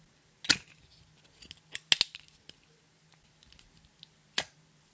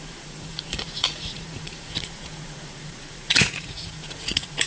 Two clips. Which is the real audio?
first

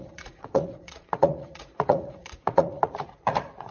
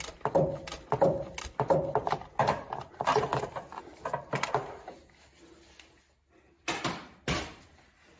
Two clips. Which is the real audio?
second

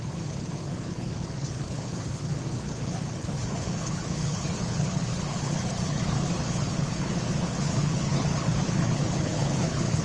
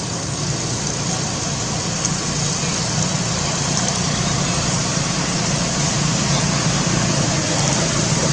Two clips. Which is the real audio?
second